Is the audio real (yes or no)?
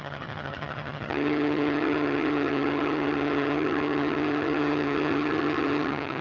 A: no